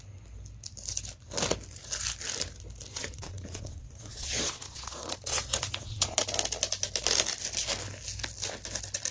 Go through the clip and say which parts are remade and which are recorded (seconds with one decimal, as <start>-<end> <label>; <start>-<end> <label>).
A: 0.0-2.9 recorded; 2.9-6.2 remade; 6.2-9.1 recorded